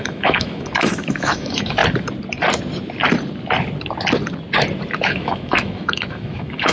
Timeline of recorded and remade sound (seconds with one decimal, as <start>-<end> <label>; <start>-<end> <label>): 0.0-1.8 remade; 1.8-5.0 recorded; 5.0-6.7 remade